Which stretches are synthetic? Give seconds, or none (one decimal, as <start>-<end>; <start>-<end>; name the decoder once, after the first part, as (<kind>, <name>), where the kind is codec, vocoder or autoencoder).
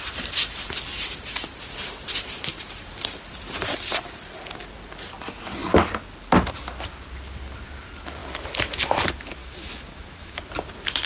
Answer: 9.4-10.4 (autoencoder, DAC-VAE)